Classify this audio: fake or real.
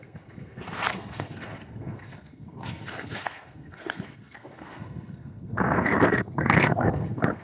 fake